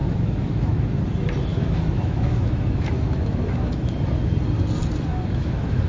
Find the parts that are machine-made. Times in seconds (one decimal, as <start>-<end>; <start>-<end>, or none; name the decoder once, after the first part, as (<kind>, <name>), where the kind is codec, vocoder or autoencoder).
0.0-0.9 (autoencoder, DAC-VAE); 1.5-4.1; 5.1-5.9